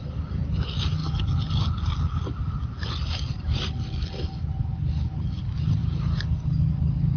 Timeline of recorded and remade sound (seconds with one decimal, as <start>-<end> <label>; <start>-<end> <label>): 0.0-7.2 recorded